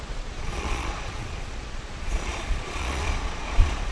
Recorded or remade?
remade